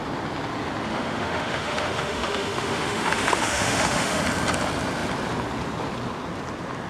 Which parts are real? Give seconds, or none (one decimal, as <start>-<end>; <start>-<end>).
0.0-0.9; 4.2-6.9